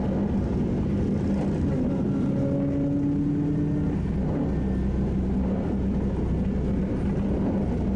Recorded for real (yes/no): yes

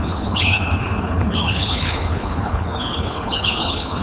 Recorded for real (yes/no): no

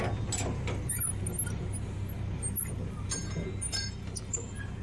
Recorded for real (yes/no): yes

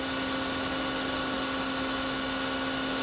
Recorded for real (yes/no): yes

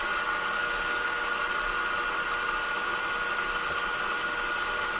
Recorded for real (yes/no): yes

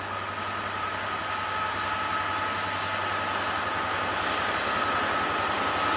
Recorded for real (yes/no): yes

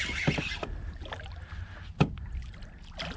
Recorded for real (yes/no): yes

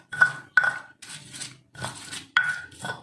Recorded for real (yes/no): yes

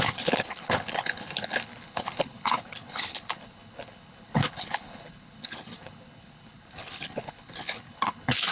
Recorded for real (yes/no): no